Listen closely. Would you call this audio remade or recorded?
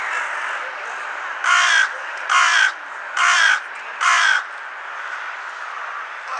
recorded